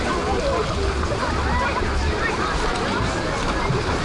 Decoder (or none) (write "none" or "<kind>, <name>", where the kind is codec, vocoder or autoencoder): none